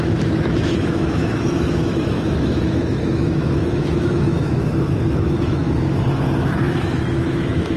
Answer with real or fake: fake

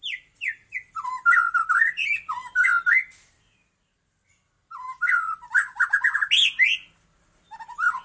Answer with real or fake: real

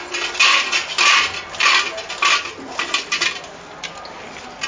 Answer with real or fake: real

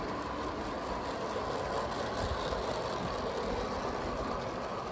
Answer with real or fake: real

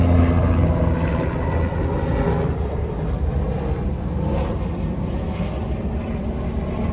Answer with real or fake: real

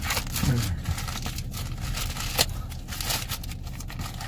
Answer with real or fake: real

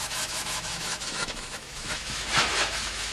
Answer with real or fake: fake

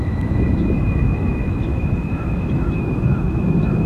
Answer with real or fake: fake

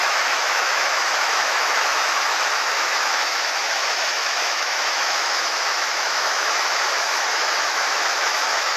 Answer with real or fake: fake